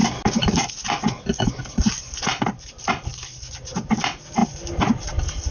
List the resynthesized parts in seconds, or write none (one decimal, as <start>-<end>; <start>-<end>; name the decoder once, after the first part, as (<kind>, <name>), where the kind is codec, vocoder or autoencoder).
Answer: none

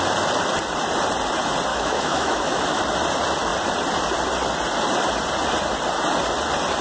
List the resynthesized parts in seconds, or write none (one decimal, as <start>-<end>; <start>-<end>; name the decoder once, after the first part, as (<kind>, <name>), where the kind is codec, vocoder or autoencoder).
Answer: 1.7-2.8 (autoencoder, DAC-VAE)

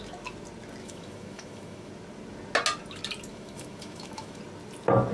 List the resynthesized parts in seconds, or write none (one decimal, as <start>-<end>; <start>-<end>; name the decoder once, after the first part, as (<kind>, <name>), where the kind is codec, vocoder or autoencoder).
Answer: 0.8-1.9 (autoencoder, DAC-VAE); 3.3-4.4

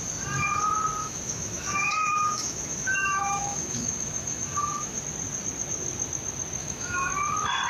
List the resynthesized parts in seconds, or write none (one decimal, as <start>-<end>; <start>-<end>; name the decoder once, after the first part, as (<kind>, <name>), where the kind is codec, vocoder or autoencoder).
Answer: 1.0-5.0 (autoencoder, DAC-VAE); 6.6-7.1

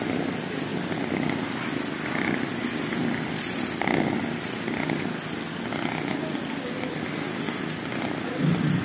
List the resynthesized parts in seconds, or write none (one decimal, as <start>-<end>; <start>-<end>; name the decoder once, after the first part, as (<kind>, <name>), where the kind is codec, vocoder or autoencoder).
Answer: none